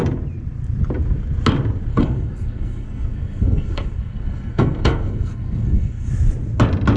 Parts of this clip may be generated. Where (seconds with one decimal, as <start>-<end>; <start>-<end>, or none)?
1.9-6.1